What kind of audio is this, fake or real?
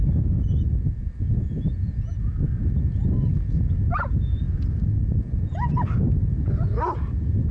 real